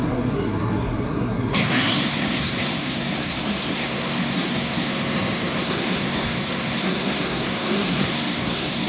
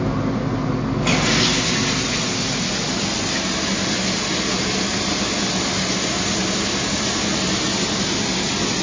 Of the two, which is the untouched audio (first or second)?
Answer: second